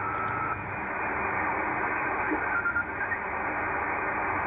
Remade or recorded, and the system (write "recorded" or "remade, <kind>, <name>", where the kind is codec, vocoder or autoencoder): recorded